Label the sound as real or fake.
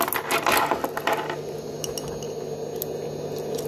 real